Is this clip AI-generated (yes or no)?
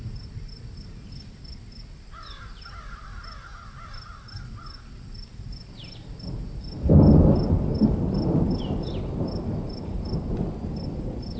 no